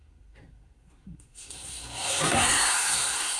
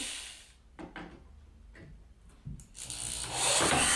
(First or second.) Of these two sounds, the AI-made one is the first